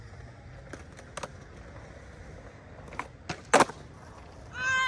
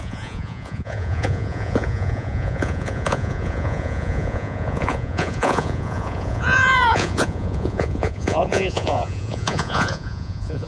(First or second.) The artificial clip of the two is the second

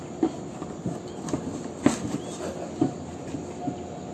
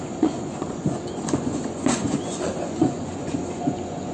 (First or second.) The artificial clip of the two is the second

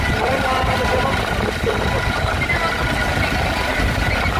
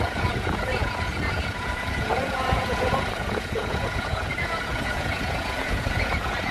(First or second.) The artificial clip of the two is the second